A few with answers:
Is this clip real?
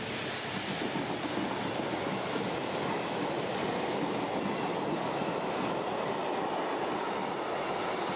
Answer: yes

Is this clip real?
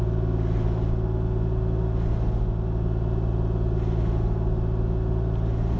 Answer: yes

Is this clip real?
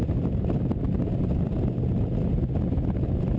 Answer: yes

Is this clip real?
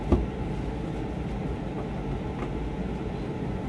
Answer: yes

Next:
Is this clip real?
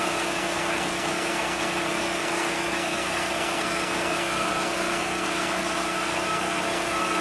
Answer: no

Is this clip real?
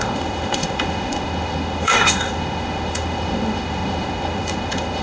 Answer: no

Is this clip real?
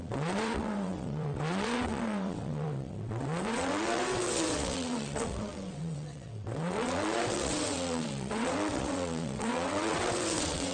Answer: no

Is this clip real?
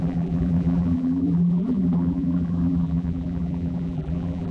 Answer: no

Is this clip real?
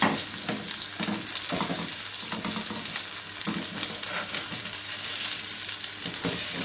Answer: yes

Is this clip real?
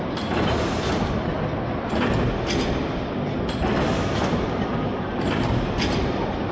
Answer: yes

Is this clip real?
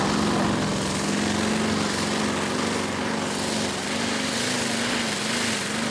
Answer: yes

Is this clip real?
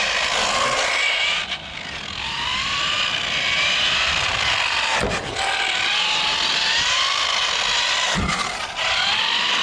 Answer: yes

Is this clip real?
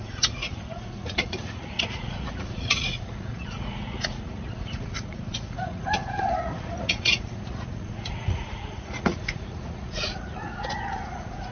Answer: no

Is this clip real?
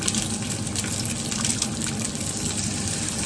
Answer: yes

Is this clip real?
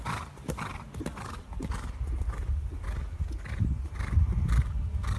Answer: yes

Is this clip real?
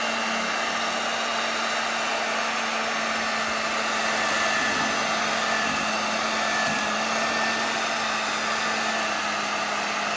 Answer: yes